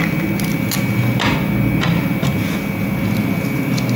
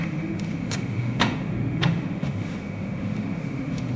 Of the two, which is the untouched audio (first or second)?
first